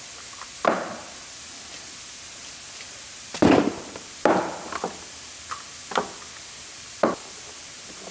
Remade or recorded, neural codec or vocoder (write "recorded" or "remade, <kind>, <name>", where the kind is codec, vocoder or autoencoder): recorded